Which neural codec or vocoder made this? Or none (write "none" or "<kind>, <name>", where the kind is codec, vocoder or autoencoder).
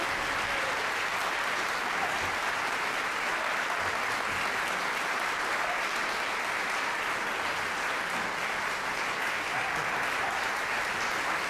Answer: none